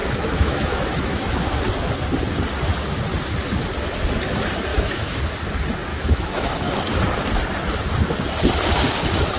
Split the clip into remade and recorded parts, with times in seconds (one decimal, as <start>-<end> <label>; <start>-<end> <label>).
0.0-1.4 remade; 1.4-4.7 recorded; 4.7-5.2 remade; 5.2-5.9 recorded; 5.9-6.8 remade; 6.8-9.4 recorded